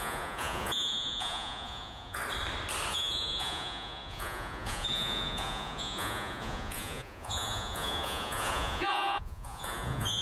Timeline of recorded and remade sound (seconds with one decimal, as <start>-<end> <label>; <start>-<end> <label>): 0.0-2.2 remade; 2.2-2.9 recorded; 2.9-10.2 remade